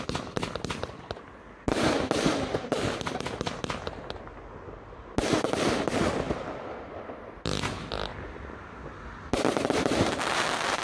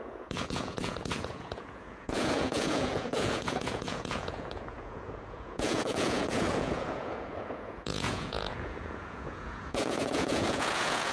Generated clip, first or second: second